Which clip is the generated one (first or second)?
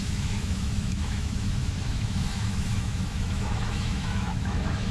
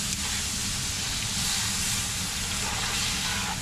first